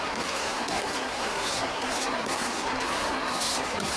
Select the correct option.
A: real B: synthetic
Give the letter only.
B